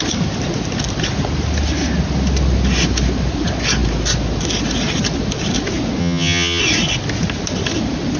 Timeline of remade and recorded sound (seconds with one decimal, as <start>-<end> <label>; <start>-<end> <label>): 0.0-6.0 recorded; 6.0-6.6 remade; 6.6-8.2 recorded